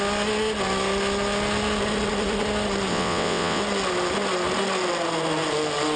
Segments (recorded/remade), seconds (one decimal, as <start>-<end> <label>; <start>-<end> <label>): 0.0-2.9 recorded; 2.9-3.6 remade; 3.6-6.0 recorded